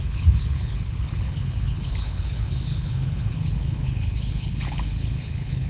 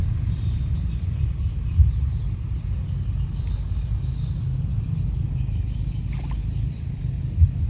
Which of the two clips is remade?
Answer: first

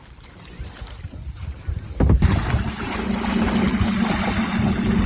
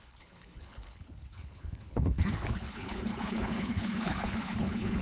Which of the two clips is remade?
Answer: second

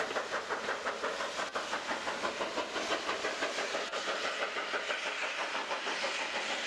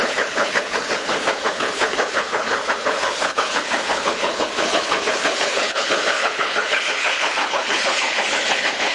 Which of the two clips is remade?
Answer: second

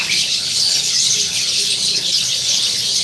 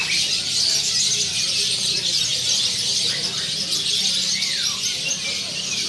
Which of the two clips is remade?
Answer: first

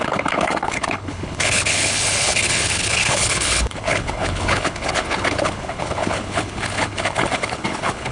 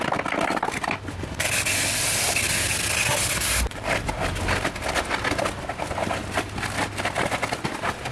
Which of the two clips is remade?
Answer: first